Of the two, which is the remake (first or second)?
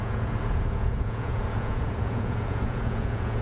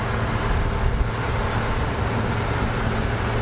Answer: first